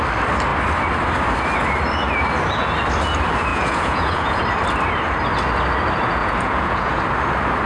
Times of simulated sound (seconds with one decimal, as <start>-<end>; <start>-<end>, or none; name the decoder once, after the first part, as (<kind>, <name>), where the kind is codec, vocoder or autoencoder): 3.5-4.4 (vocoder, Vocos); 6.2-7.0